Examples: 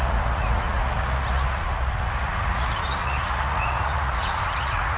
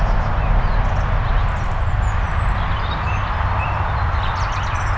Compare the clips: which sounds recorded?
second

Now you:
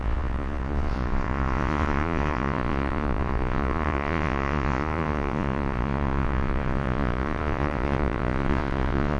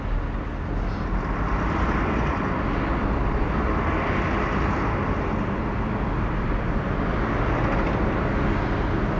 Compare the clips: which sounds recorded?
second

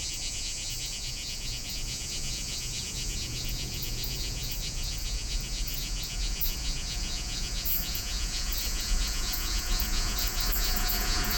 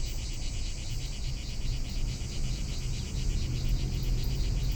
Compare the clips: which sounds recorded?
second